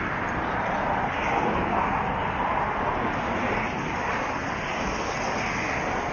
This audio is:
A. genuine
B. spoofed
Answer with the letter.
A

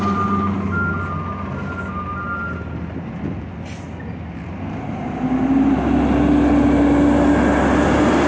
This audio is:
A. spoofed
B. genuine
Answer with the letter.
B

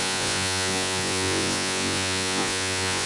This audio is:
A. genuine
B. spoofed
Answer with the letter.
B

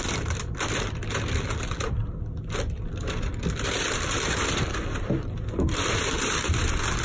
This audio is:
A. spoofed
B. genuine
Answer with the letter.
A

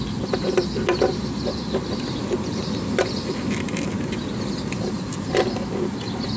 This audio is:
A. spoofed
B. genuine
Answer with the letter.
B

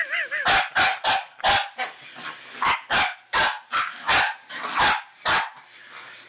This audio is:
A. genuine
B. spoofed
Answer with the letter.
A